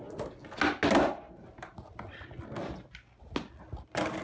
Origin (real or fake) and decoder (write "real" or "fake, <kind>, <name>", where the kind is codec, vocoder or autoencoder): real